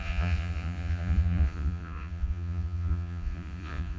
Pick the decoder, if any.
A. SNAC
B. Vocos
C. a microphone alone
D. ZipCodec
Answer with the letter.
B